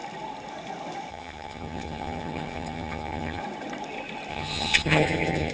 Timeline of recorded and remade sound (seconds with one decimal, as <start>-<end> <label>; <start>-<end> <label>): 0.0-1.1 recorded; 1.1-3.4 remade; 3.4-4.3 recorded; 4.3-5.5 remade